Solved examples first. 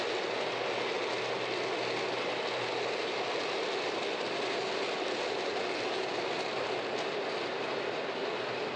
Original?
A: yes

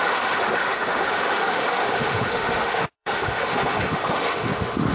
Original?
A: no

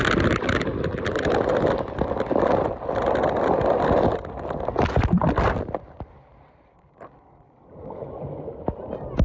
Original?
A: yes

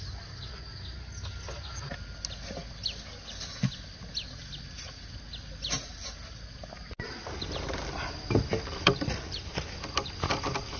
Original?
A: yes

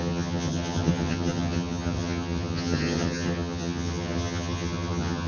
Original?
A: no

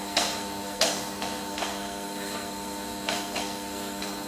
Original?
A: no